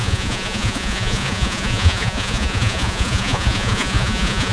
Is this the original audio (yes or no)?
no